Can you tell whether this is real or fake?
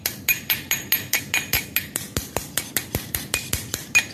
real